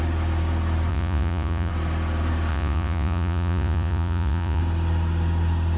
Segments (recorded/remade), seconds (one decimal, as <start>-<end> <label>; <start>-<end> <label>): 0.0-0.9 recorded; 0.9-1.7 remade; 1.7-2.5 recorded; 2.5-4.6 remade; 4.6-5.8 recorded